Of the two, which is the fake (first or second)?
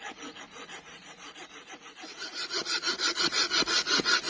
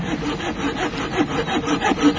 first